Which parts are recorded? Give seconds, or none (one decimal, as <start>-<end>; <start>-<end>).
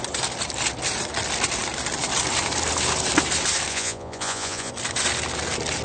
0.0-3.7; 4.7-5.8